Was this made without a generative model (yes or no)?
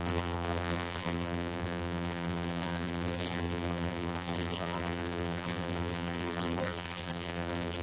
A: no